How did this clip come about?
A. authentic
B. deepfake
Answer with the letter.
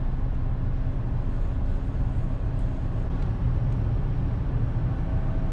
A